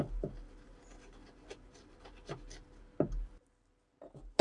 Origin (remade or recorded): recorded